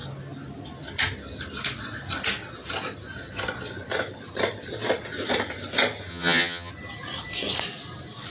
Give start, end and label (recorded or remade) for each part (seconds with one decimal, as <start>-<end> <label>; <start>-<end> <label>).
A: 0.0-6.1 recorded; 6.1-6.7 remade; 6.7-8.3 recorded